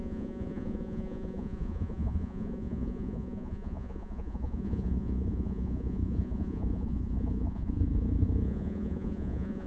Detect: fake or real fake